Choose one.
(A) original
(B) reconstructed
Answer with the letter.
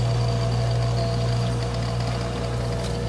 A